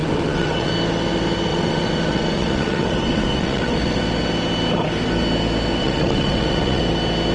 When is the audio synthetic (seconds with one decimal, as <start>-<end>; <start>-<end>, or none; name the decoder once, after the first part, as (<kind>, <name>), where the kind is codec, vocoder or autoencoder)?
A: 0.0-0.7 (vocoder, WaveNeXt); 1.5-4.0; 5.8-6.8